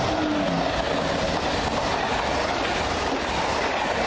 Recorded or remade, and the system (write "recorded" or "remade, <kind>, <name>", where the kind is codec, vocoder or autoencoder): recorded